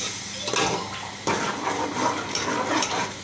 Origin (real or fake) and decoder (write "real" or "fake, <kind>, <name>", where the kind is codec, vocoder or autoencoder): real